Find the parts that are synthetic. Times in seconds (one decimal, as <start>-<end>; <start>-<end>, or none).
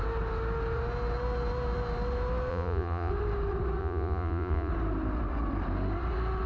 2.5-3.1; 3.8-4.7